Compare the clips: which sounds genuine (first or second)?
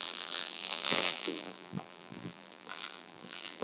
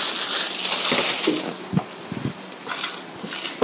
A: second